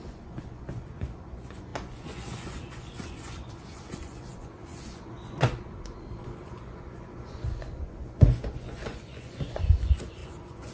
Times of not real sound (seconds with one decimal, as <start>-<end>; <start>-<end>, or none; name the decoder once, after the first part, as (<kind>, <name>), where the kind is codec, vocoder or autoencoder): 0.0-10.7 (vocoder, Vocos)